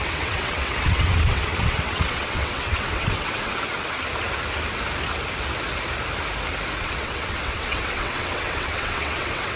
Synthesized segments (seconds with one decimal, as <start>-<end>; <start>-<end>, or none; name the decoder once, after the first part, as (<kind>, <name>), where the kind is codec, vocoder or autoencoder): 0.0-3.5 (vocoder, WaveNeXt); 6.8-9.6